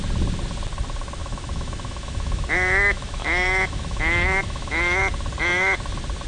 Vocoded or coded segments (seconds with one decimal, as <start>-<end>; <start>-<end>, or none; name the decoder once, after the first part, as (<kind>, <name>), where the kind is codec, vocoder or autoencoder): 1.2-5.0 (autoencoder, DAC-VAE)